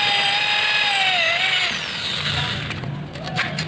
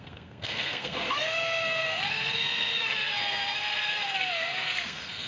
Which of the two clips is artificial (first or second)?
second